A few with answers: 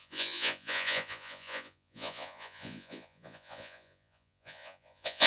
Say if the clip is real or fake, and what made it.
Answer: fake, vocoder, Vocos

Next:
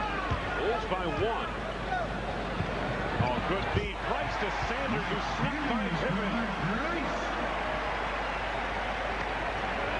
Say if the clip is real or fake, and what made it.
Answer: real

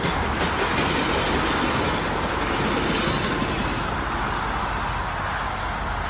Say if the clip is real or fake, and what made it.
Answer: real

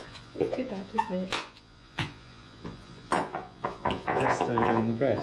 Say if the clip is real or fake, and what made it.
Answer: fake, vocoder, Vocos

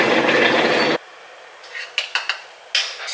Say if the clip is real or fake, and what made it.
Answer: real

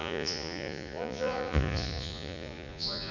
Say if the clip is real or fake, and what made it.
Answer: fake, vocoder, Vocos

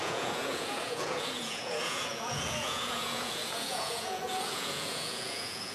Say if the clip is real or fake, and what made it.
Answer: fake, vocoder, Vocos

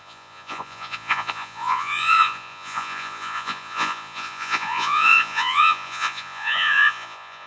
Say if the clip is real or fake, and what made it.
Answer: fake, vocoder, Vocos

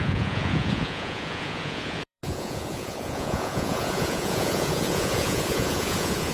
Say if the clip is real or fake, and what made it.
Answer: fake, vocoder, Vocos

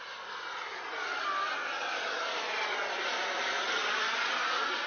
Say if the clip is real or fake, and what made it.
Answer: real